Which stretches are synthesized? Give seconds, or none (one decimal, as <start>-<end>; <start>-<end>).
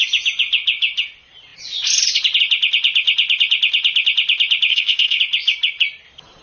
4.7-5.2